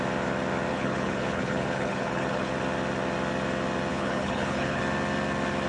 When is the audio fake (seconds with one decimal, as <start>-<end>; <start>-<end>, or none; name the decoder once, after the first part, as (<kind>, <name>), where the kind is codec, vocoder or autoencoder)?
0.7-2.5 (codec, HILCodec); 3.9-4.8